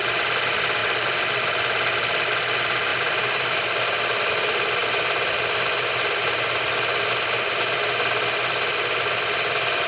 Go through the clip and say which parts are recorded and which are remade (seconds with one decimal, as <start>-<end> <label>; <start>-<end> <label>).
0.0-0.8 recorded; 0.8-1.4 remade; 1.4-2.9 recorded; 2.9-3.7 remade; 3.7-9.9 recorded